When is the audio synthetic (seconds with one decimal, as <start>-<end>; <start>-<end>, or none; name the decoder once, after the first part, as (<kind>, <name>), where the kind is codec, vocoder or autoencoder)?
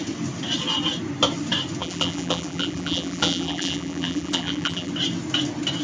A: 1.8-4.9 (vocoder, BigVGAN v2)